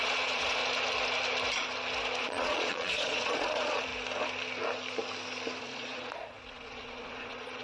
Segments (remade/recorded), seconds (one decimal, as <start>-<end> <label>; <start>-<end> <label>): 0.0-0.6 remade; 0.6-2.2 recorded; 2.2-3.9 remade; 3.9-5.6 recorded; 5.6-7.6 remade